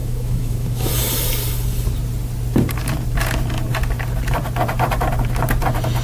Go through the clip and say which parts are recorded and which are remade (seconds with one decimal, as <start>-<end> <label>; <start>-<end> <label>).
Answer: 0.0-0.9 remade; 0.9-6.0 recorded